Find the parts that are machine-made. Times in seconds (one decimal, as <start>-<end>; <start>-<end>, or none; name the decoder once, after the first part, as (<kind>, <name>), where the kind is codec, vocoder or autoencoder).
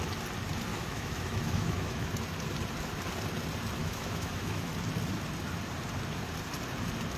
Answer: 0.7-2.1 (autoencoder, DAC-VAE); 3.8-4.7